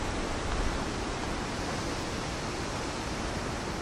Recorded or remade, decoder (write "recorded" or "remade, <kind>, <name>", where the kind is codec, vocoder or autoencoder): recorded